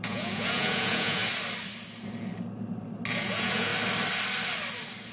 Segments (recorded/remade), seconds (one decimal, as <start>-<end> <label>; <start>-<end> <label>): 0.0-1.2 remade; 1.2-3.1 recorded; 3.1-3.7 remade; 3.7-5.1 recorded